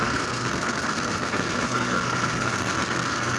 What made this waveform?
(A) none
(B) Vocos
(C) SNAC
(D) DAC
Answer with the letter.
C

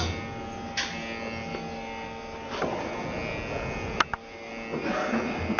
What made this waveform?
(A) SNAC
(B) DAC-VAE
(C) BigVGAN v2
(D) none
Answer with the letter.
D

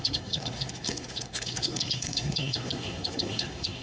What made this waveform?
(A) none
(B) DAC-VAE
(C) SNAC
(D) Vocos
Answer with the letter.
C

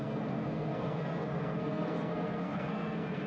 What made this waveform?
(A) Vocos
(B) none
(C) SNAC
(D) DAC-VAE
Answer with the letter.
C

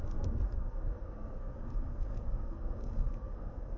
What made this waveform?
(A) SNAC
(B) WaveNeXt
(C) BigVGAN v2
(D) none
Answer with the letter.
A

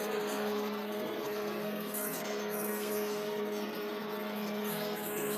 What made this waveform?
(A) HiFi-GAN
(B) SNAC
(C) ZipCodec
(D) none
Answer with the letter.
B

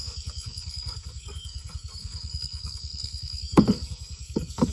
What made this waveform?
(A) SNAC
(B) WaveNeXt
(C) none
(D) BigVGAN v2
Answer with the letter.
A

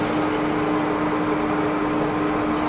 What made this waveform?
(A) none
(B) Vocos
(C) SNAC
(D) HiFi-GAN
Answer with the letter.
A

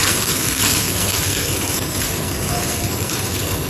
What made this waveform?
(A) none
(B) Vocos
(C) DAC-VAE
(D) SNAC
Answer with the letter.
D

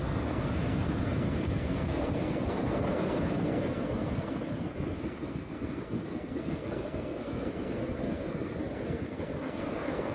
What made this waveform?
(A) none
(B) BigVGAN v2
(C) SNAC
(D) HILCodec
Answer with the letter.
C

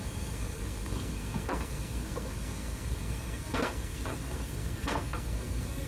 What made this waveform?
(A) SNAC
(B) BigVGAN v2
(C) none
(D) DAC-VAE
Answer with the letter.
A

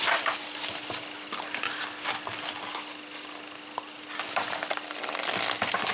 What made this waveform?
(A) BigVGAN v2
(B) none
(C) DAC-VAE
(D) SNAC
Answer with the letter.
B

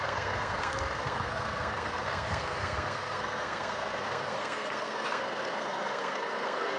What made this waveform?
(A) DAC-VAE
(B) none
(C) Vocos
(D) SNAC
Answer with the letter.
D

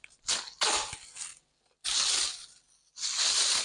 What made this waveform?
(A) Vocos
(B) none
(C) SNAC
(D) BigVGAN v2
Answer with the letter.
B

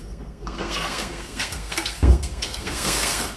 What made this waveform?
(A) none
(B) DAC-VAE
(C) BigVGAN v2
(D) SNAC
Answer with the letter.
D